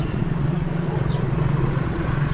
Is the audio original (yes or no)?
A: no